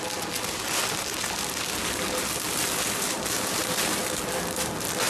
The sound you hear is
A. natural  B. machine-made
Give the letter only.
A